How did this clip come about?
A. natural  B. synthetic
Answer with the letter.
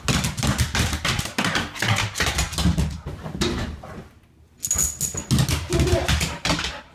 A